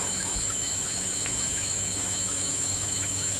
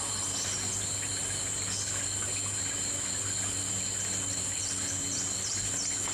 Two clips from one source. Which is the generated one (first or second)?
first